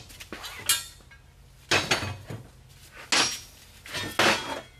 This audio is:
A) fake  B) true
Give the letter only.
B